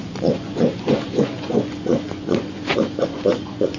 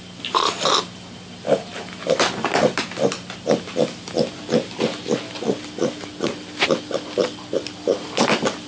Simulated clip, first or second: first